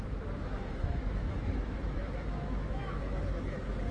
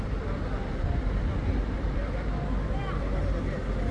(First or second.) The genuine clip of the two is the second